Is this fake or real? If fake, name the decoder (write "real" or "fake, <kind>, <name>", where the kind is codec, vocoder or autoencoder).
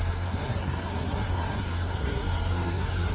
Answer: fake, codec, SNAC